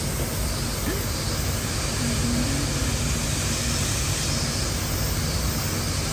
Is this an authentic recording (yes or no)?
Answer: yes